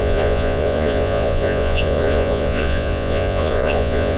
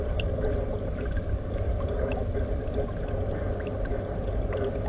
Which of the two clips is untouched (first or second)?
second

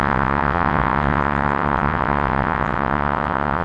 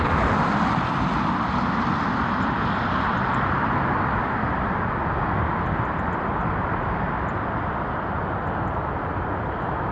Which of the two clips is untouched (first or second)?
second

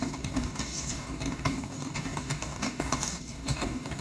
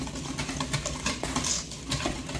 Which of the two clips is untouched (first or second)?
second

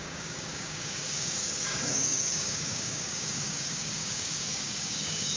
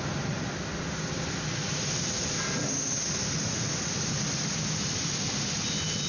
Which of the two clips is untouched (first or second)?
second